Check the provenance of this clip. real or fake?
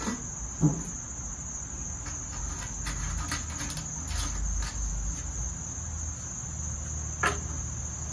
real